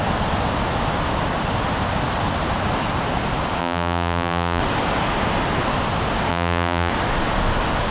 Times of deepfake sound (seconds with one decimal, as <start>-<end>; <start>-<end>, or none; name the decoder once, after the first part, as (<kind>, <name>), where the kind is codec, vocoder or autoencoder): 3.6-4.6 (vocoder, BigVGAN v2); 6.3-6.9